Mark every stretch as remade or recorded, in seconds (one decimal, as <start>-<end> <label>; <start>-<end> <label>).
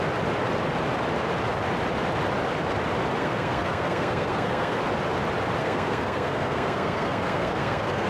0.0-3.2 recorded; 3.2-4.8 remade; 4.8-5.6 recorded; 5.6-8.1 remade